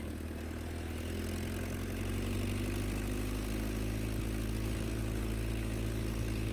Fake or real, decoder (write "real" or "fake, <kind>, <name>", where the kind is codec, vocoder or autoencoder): real